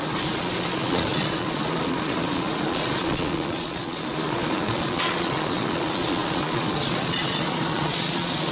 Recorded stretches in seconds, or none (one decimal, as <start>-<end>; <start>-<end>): none